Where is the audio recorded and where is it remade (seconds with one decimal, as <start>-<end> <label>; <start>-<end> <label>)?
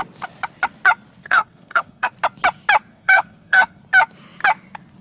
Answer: 0.0-1.2 recorded; 1.2-2.1 remade; 2.1-2.9 recorded; 2.9-3.8 remade; 3.8-5.0 recorded